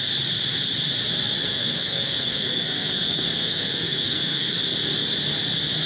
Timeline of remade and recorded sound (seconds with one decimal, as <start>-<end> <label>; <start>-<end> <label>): 0.0-1.4 recorded; 1.4-4.5 remade; 4.5-5.9 recorded